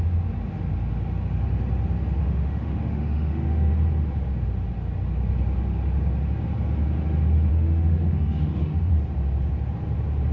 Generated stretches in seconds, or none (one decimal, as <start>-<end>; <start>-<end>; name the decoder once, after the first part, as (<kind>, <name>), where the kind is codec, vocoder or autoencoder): 2.2-3.7 (autoencoder, DAC-VAE); 7.5-8.9

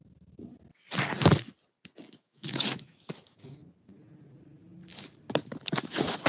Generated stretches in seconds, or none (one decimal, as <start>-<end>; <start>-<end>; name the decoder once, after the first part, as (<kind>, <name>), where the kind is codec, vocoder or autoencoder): 2.1-3.6 (autoencoder, DAC-VAE)

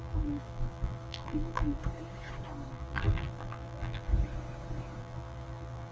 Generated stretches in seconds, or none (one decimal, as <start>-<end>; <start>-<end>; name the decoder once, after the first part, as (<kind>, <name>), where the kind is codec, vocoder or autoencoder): 0.0-1.8 (vocoder, BigVGAN v2); 2.7-4.1; 5.0-5.9